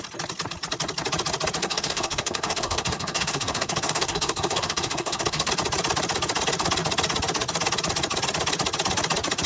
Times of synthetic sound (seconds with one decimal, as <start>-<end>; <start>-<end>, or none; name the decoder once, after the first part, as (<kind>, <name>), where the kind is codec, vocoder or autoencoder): 1.6-5.5 (codec, SNAC)